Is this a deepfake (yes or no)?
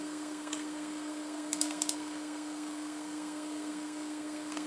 yes